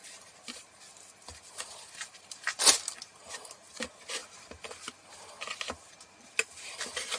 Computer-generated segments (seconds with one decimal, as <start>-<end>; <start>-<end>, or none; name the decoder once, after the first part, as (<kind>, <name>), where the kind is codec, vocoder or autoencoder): 0.0-0.8 (vocoder, BigVGAN v2)